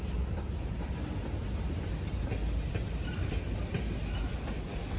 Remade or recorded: recorded